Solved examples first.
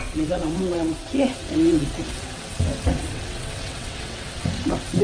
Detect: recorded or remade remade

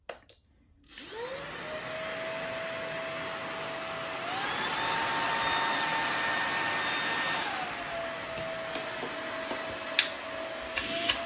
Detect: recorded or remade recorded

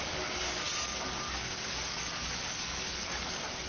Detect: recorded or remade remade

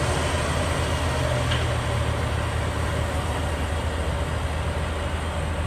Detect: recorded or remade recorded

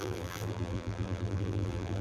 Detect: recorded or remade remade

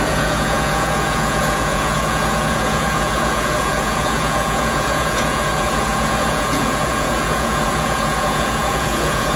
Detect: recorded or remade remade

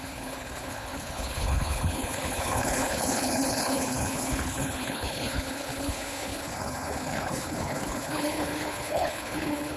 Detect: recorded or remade remade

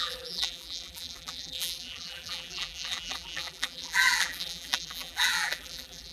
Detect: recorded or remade remade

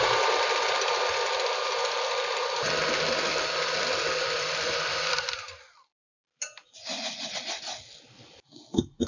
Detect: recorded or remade recorded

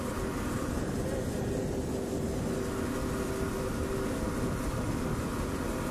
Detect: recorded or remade recorded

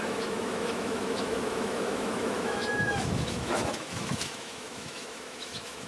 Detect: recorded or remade remade